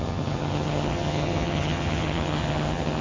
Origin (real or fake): fake